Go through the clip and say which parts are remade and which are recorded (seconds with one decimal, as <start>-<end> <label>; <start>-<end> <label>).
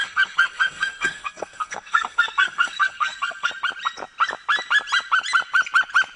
0.0-3.5 remade; 3.5-6.2 recorded